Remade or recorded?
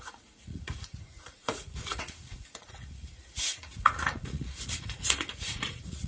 remade